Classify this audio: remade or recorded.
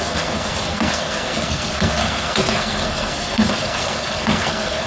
remade